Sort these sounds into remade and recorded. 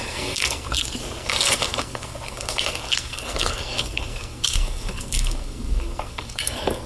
remade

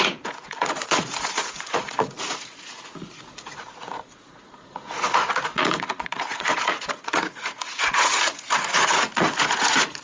remade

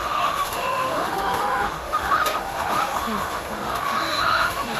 remade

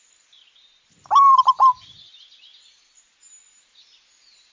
recorded